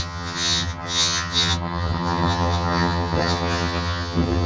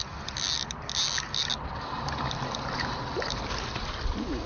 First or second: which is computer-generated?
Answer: first